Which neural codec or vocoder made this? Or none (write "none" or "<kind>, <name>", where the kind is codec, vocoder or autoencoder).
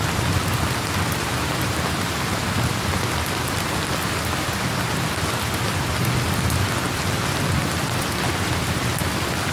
none